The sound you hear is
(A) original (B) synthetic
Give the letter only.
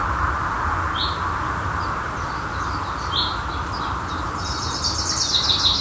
A